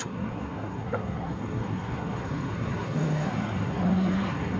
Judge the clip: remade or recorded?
remade